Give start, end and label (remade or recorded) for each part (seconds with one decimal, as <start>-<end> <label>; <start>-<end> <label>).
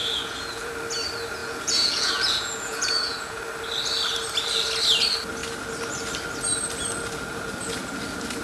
0.0-0.7 remade; 0.7-1.4 recorded; 1.4-3.4 remade; 3.4-8.4 recorded